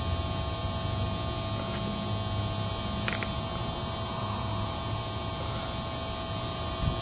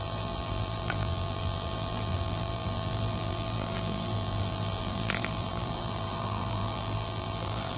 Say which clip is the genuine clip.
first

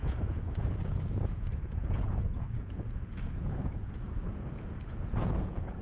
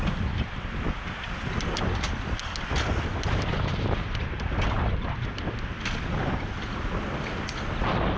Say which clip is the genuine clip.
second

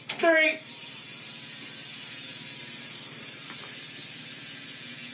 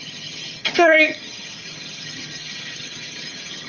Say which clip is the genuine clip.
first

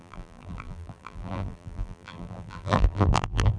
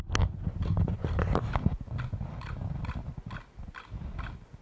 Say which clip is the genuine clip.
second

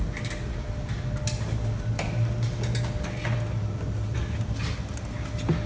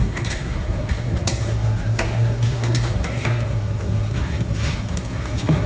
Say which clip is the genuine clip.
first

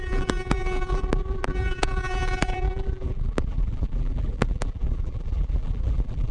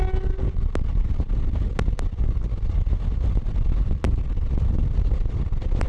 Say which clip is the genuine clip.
second